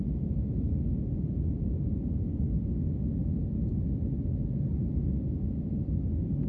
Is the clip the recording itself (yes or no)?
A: yes